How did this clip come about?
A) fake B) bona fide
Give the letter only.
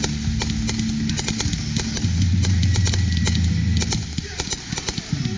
B